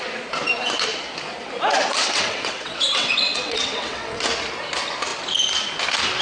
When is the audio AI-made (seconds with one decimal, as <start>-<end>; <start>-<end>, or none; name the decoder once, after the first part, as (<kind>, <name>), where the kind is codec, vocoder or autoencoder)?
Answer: 2.0-4.2 (vocoder, WaveNeXt)